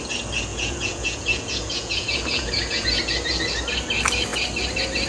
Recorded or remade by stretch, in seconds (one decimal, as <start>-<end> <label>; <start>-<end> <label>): 0.0-0.5 recorded; 0.5-3.0 remade; 3.0-5.1 recorded